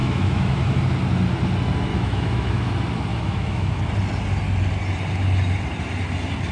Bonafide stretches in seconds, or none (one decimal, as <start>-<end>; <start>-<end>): 0.8-1.9; 2.7-3.1; 3.8-6.5